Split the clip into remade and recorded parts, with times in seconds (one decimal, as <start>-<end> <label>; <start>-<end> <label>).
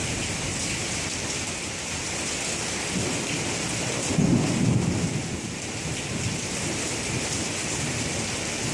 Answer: 0.0-8.7 recorded